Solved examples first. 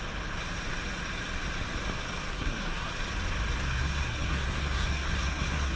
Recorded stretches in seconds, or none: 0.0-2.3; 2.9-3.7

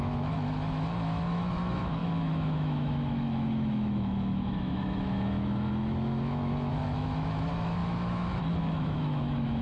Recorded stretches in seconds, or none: none

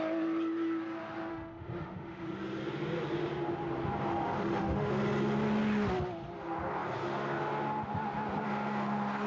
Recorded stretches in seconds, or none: 0.0-1.3; 2.4-4.1; 4.9-9.3

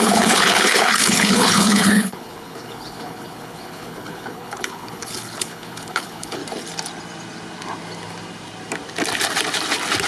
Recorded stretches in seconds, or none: 6.4-10.1

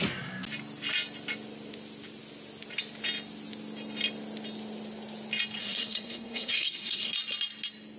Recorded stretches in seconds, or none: 0.0-5.6; 7.1-8.0

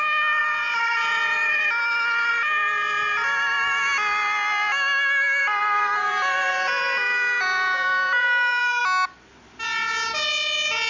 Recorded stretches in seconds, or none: 0.0-0.4; 2.3-5.4; 8.8-10.9

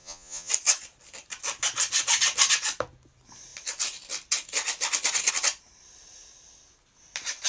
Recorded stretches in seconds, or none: 0.5-7.5